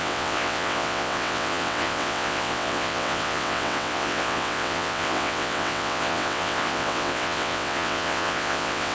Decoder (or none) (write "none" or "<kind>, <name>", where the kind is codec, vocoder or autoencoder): vocoder, WaveNeXt